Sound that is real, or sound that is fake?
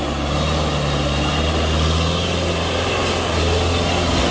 real